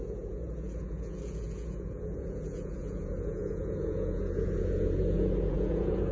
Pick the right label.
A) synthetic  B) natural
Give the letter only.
A